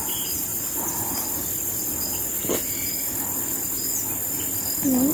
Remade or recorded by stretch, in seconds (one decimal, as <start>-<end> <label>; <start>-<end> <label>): 0.0-5.1 recorded